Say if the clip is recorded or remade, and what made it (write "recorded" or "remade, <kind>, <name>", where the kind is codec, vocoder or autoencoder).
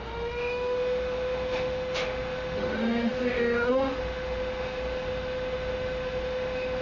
remade, autoencoder, DAC-VAE